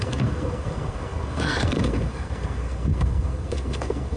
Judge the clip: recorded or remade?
remade